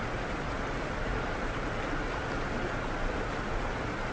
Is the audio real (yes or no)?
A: yes